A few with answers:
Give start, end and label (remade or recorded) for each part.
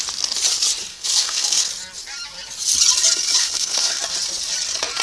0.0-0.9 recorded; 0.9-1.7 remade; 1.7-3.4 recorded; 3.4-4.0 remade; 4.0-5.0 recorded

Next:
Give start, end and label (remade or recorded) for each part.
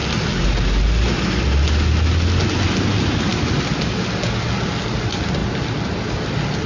0.0-6.7 recorded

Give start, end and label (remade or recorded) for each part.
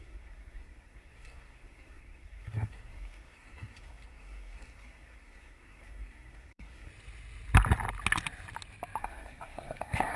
0.0-6.9 remade; 6.9-9.0 recorded; 9.0-10.2 remade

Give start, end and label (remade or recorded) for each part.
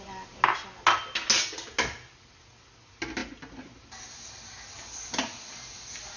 0.0-6.2 recorded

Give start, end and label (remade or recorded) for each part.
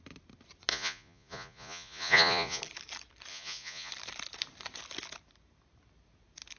0.0-0.7 recorded; 0.7-2.6 remade; 2.6-3.3 recorded; 3.3-3.9 remade; 3.9-6.6 recorded